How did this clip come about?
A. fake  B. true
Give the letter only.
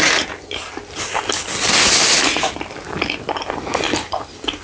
B